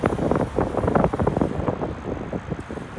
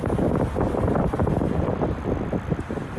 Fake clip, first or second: second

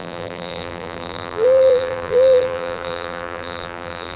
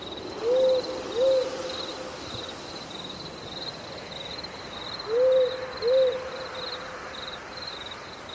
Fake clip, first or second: first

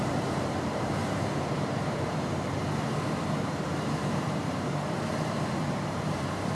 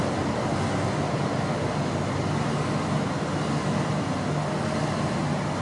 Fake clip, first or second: first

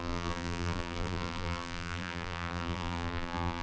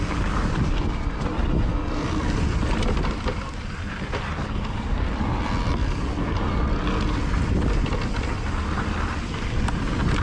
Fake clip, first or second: first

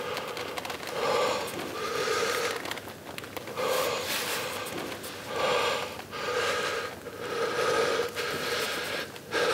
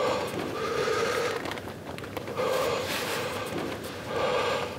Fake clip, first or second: second